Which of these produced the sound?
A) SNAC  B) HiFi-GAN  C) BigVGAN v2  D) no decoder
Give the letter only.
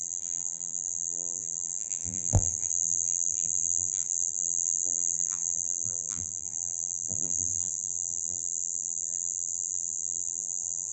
C